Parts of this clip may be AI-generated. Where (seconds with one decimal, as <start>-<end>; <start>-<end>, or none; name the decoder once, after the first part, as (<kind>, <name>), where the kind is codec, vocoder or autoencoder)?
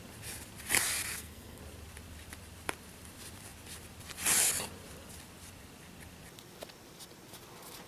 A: 1.1-1.6 (codec, SNAC)